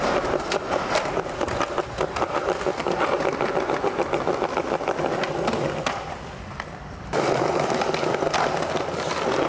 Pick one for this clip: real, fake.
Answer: real